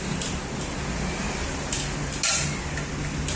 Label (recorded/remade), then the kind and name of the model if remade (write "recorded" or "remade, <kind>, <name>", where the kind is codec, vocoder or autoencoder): recorded